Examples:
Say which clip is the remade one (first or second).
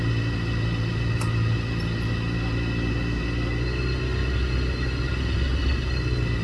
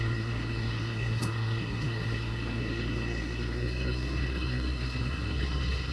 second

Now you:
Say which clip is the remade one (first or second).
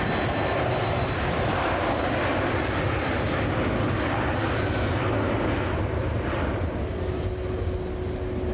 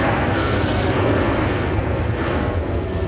second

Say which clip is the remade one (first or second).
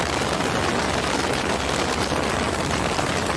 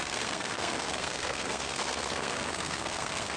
second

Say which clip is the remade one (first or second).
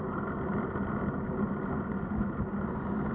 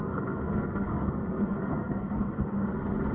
second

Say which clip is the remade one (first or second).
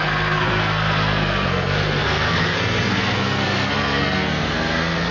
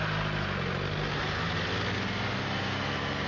first